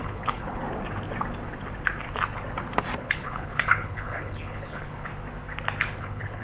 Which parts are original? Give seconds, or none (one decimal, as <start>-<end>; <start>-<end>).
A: 0.6-3.0; 5.1-6.0